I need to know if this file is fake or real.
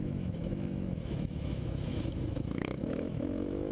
fake